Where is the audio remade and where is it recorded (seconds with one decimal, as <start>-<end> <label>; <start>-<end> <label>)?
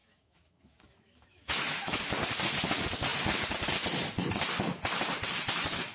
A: 0.0-2.0 remade; 2.0-5.9 recorded